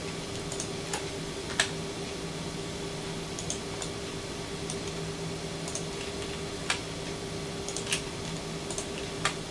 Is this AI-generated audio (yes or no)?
no